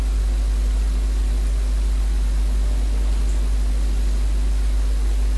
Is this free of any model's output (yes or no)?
yes